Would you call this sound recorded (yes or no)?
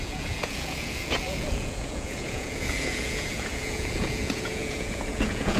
no